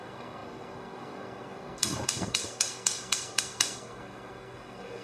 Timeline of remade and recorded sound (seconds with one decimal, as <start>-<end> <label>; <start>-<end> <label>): 0.0-5.0 remade